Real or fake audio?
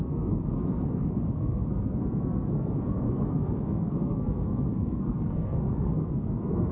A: fake